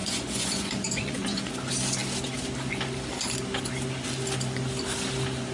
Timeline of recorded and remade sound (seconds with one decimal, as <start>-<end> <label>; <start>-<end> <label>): 0.0-1.5 remade; 1.5-5.5 recorded